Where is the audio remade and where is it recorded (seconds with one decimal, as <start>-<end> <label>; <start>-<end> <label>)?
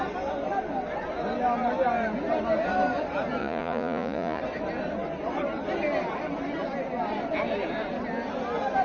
0.0-3.4 recorded; 3.4-4.4 remade; 4.4-8.8 recorded